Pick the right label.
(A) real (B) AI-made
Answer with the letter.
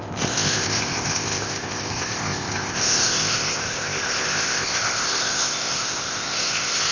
B